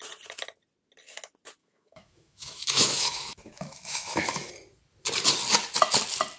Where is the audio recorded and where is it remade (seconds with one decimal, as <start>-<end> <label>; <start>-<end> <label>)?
0.0-1.6 recorded; 1.6-4.5 remade; 4.5-6.4 recorded